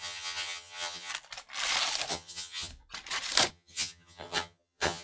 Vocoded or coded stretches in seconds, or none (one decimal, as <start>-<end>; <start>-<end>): 0.0-1.1; 2.1-2.7; 3.5-5.0